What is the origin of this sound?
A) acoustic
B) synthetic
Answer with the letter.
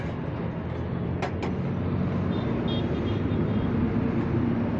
A